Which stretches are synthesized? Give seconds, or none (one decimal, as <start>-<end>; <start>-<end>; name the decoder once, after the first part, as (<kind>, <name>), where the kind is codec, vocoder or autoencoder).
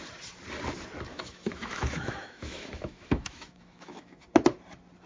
1.1-4.2 (autoencoder, DAC-VAE)